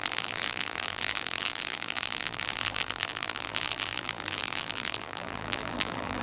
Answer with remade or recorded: remade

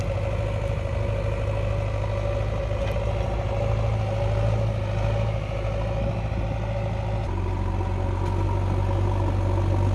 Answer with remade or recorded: recorded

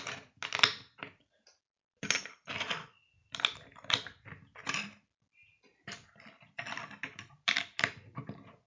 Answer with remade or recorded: recorded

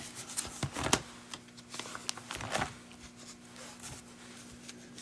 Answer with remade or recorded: recorded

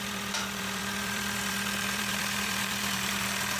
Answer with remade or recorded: remade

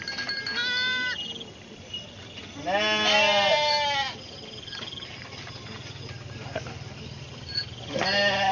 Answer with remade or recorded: recorded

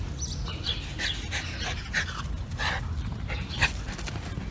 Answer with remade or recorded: recorded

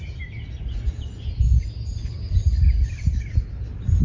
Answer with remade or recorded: recorded